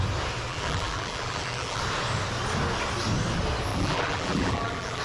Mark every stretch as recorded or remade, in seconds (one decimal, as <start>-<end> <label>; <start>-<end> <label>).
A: 0.0-0.5 recorded; 0.5-1.8 remade; 1.8-3.7 recorded; 3.7-5.0 remade